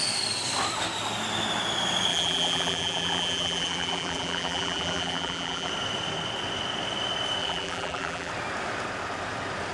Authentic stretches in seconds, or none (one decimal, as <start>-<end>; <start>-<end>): 0.0-2.1; 5.7-7.4; 8.3-9.7